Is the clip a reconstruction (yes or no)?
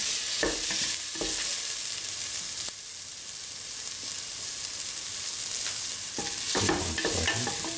no